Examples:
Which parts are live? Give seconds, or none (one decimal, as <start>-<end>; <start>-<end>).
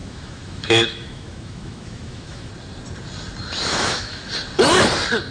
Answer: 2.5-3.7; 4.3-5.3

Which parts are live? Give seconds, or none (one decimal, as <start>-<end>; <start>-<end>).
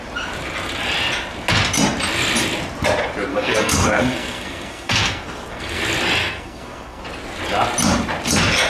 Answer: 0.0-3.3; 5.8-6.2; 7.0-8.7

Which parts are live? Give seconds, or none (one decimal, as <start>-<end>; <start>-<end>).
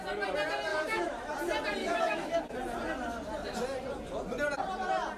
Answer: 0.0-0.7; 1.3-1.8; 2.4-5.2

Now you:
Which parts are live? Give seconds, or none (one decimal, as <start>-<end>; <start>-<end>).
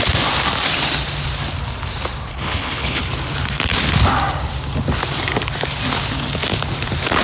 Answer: 0.0-2.3; 3.0-7.2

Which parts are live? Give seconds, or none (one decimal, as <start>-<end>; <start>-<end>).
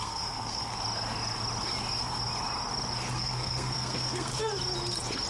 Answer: 0.7-3.1; 4.3-5.3